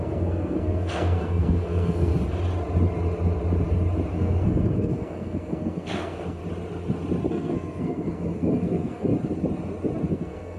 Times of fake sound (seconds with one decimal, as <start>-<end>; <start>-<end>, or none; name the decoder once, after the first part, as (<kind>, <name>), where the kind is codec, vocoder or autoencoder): 0.0-2.1 (codec, SNAC); 4.1-6.4; 7.3-9.1; 10.1-10.6